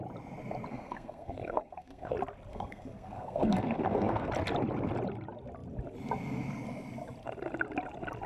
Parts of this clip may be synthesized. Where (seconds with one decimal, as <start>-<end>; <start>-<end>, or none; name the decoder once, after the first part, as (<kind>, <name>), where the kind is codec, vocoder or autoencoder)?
0.7-2.1 (codec, SNAC); 2.5-4.3